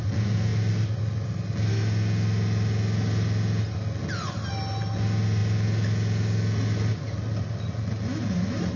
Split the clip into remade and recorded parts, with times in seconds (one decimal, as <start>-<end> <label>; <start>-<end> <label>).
0.0-8.8 recorded